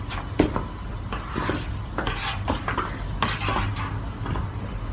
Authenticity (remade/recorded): recorded